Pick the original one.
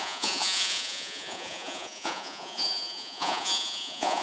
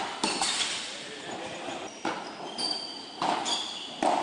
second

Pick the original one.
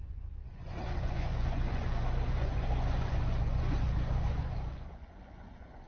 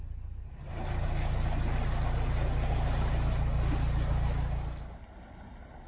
second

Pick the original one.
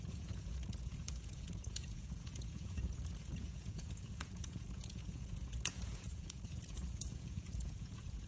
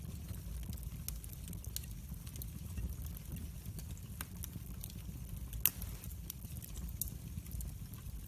second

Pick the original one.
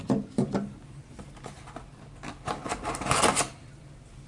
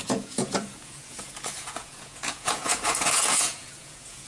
first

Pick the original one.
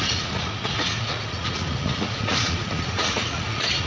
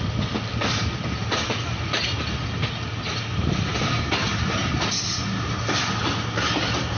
second